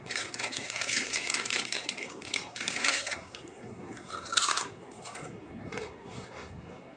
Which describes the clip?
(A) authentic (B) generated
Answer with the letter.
B